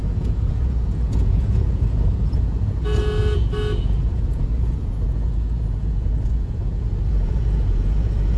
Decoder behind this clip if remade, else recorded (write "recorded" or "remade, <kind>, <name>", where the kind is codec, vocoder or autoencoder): remade, vocoder, Vocos